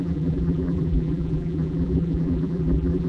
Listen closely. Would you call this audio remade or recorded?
remade